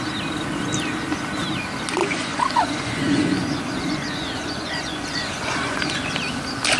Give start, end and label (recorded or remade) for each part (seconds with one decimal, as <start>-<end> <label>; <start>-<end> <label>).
0.0-2.0 recorded; 2.0-6.1 remade; 6.1-6.8 recorded